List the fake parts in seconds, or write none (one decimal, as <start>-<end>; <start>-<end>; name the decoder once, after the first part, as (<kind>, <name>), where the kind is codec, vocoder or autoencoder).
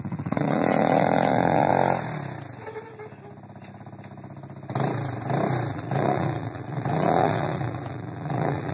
0.0-1.7 (vocoder, Vocos); 5.7-8.7